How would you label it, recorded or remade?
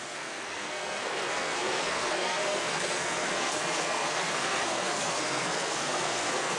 remade